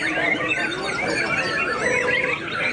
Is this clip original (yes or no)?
yes